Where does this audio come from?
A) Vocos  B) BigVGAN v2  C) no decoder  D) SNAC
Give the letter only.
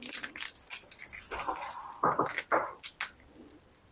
C